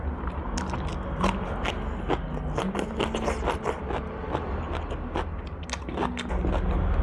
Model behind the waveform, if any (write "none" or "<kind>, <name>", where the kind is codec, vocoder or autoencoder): none